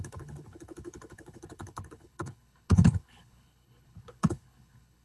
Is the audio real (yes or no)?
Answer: no